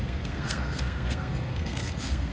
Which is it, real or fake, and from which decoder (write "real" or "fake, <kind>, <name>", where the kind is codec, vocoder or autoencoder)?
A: fake, codec, SNAC